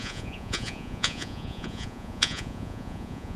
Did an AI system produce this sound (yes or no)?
yes